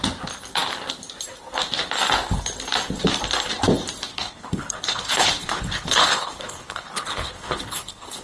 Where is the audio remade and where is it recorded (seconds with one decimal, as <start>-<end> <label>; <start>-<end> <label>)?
0.0-4.1 recorded; 4.1-8.2 remade